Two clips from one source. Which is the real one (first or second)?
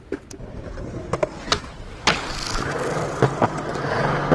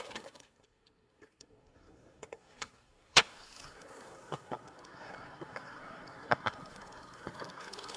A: first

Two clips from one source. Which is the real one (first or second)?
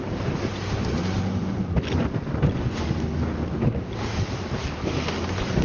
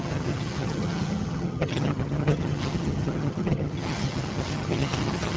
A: first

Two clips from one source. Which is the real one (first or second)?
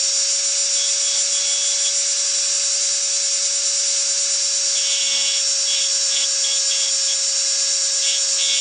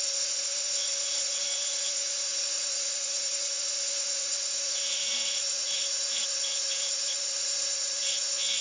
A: first